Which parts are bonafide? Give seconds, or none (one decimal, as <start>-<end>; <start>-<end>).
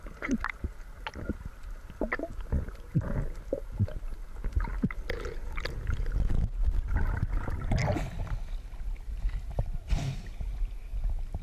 0.0-11.4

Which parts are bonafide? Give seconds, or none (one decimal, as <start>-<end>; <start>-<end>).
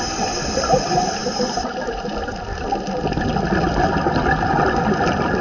0.0-5.4